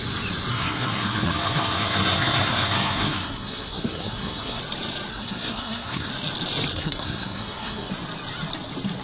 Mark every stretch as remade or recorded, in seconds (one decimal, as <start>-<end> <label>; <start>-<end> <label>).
0.0-0.5 recorded; 0.5-4.6 remade; 4.6-5.1 recorded; 5.1-6.1 remade; 6.1-6.7 recorded; 6.7-7.9 remade; 7.9-9.0 recorded

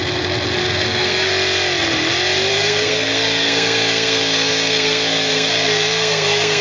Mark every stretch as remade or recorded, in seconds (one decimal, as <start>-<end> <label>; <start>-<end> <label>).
0.0-0.6 recorded; 0.6-1.3 remade; 1.3-2.5 recorded; 2.5-6.6 remade

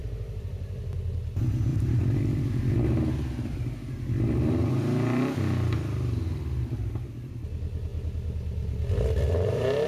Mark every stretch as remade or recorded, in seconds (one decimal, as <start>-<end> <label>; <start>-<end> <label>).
0.0-0.8 remade; 0.8-1.7 recorded; 1.7-4.7 remade; 4.7-9.9 recorded

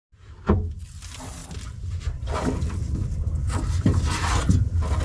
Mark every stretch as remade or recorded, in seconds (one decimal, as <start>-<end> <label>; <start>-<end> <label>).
0.0-1.4 recorded; 1.4-4.4 remade; 4.4-5.0 recorded

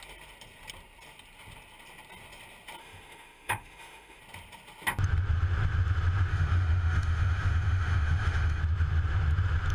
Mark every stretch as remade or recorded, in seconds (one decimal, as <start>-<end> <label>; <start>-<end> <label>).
0.0-2.8 recorded; 2.8-4.2 remade; 4.2-6.3 recorded; 6.3-8.6 remade; 8.6-9.7 recorded